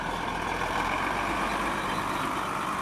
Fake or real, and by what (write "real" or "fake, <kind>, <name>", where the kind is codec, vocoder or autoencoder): real